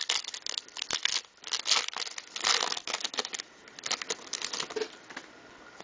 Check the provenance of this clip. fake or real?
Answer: real